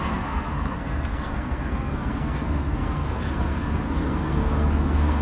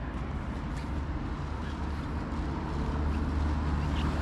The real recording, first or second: second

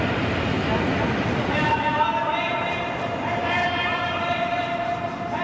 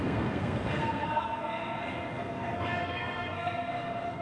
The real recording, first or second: first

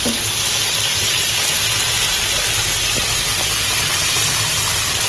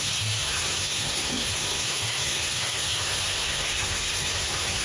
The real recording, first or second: first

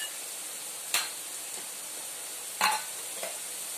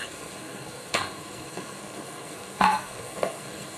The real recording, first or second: first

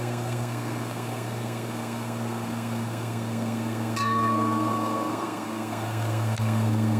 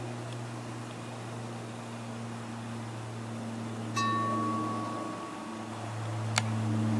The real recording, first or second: second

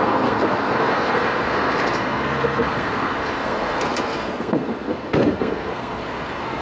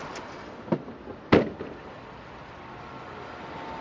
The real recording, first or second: second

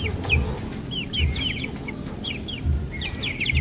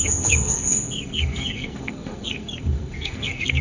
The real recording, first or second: first